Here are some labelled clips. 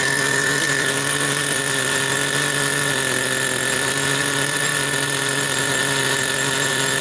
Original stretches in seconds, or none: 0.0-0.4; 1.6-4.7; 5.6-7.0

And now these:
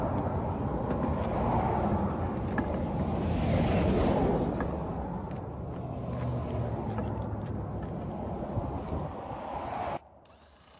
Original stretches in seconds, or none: 0.0-10.8